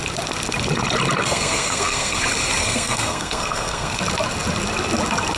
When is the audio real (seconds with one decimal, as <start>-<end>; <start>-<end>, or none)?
0.0-1.2; 2.2-2.6; 4.0-5.4